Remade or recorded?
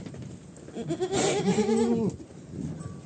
recorded